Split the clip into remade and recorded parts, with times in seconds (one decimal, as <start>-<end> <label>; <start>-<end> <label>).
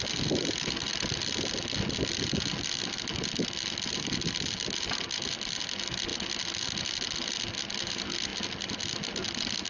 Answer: 0.0-9.7 recorded